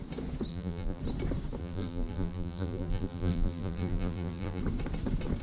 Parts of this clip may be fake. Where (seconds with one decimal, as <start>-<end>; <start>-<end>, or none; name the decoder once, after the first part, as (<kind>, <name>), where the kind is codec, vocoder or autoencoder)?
0.5-1.0 (vocoder, BigVGAN v2); 1.6-4.6